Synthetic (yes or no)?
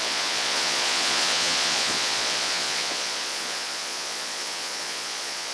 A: yes